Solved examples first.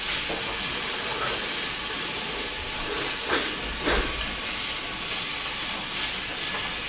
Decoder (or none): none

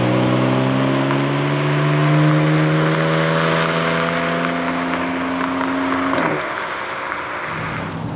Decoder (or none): none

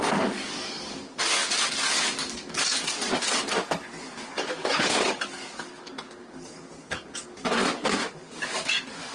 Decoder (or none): codec, DAC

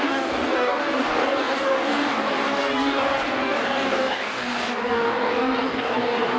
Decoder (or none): codec, DAC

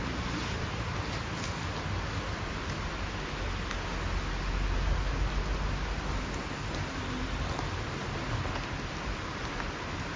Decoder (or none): none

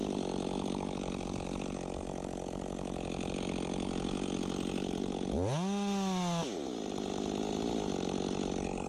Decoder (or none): none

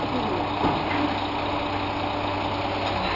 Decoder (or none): none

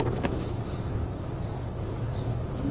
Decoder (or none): codec, DAC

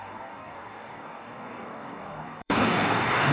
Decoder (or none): codec, DAC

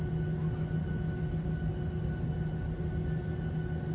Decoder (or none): none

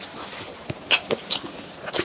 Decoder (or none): none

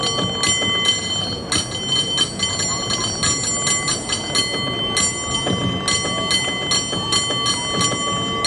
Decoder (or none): none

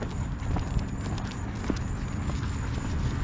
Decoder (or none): none